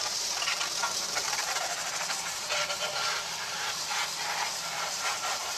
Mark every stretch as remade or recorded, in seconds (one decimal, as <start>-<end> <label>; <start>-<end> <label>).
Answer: 0.0-5.6 remade